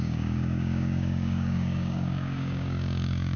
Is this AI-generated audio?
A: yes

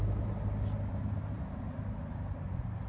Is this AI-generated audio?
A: no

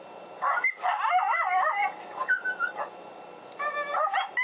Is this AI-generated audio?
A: no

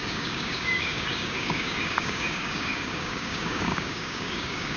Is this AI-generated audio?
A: yes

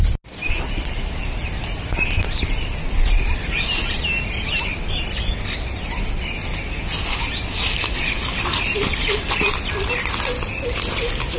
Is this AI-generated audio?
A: no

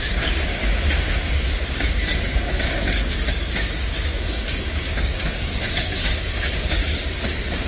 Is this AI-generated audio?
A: yes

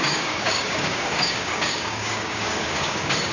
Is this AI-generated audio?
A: yes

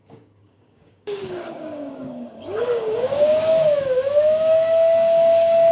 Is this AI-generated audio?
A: yes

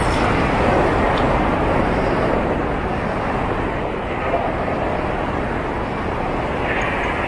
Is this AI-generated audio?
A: no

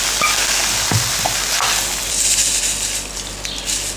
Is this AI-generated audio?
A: no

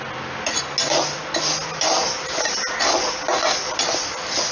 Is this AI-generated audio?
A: no